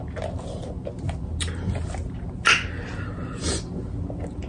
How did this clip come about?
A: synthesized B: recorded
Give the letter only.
B